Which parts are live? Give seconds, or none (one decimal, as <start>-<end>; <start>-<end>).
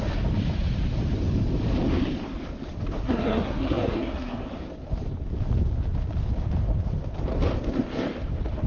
0.0-3.0; 4.4-8.7